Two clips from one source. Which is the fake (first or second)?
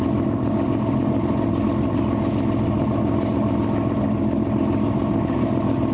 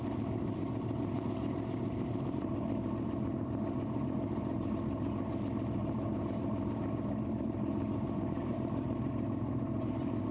second